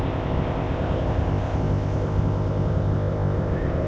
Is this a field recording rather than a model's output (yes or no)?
no